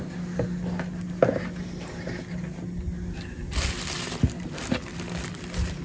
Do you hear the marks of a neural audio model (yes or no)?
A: no